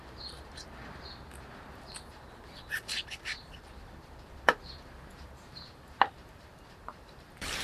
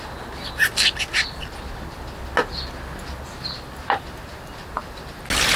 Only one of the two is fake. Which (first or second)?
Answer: first